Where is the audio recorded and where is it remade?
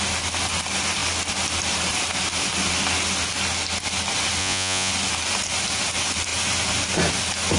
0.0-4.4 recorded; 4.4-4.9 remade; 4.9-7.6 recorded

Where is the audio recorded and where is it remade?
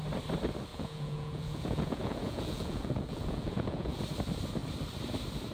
0.0-0.7 recorded; 0.7-4.0 remade; 4.0-5.5 recorded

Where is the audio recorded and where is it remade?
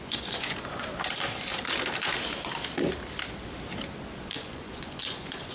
0.0-0.9 remade; 0.9-4.1 recorded; 4.1-5.5 remade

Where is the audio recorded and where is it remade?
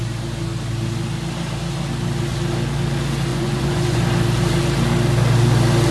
0.0-3.3 recorded; 3.3-4.0 remade; 4.0-5.9 recorded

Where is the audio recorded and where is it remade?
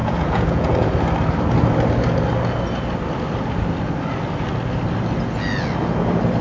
0.0-0.9 remade; 0.9-6.4 recorded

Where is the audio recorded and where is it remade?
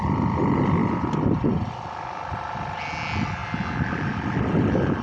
0.0-5.0 recorded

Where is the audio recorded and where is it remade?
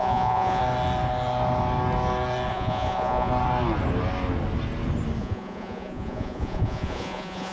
0.0-0.6 remade; 0.6-2.5 recorded; 2.5-3.3 remade; 3.3-5.2 recorded; 5.2-7.5 remade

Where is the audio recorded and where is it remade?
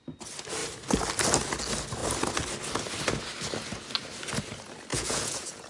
0.0-4.9 recorded; 4.9-5.7 remade